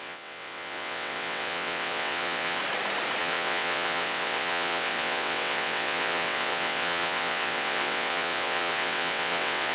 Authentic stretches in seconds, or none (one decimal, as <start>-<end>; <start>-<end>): 2.6-3.2